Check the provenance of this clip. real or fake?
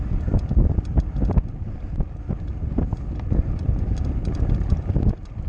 fake